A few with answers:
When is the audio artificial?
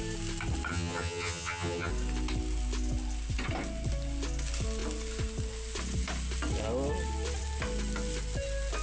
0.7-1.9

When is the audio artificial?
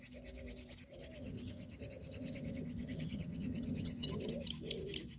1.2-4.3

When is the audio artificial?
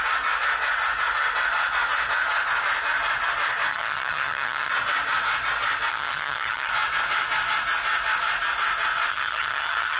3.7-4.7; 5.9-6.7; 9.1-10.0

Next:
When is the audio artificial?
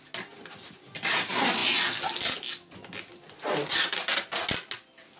none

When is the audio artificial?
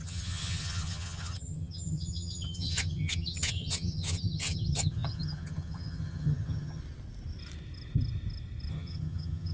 0.0-6.8; 8.7-9.5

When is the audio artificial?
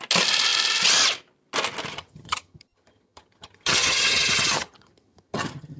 1.9-5.8